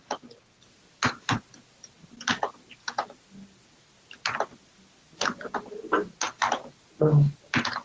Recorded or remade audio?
recorded